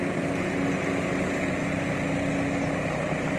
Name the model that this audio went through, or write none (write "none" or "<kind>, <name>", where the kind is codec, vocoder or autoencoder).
none